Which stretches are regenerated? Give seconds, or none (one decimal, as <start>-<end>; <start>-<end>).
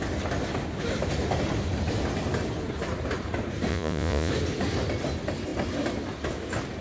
3.7-4.3